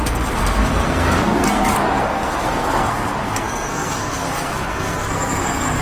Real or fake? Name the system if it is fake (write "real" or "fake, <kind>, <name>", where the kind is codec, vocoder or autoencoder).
fake, codec, SNAC